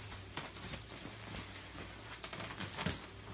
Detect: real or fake real